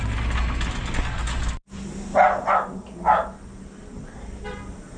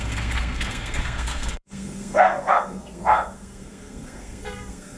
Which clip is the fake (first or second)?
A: second